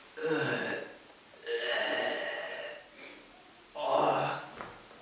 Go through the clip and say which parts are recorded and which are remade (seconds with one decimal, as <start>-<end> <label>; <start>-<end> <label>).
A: 0.0-5.0 recorded